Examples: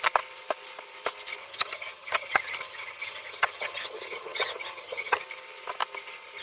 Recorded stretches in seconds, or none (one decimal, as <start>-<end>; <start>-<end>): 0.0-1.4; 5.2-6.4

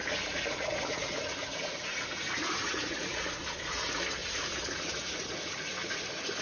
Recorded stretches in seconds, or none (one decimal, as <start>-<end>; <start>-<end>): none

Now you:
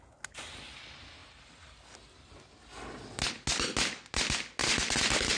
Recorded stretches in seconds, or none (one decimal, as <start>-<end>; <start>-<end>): 0.0-5.4

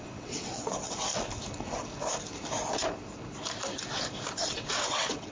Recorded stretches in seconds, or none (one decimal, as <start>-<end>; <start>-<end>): 1.1-4.3